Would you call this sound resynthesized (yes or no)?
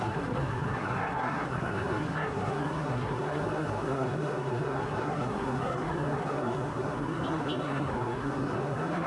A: yes